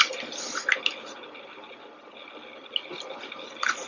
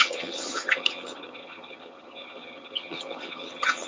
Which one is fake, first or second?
second